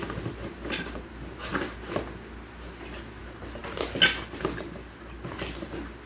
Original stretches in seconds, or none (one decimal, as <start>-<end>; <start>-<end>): 0.0-6.1